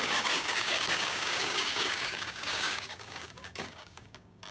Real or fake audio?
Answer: fake